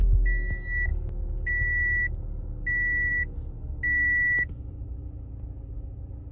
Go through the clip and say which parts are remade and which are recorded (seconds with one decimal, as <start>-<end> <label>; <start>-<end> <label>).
0.0-6.3 recorded